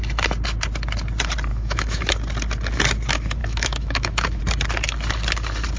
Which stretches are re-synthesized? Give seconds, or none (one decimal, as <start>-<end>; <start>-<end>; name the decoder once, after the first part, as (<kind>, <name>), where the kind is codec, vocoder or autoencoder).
1.5-2.0 (autoencoder, DAC-VAE); 3.4-4.4